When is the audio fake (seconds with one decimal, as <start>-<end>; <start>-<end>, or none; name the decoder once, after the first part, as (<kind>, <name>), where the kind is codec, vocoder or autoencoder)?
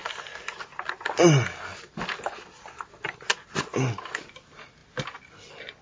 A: none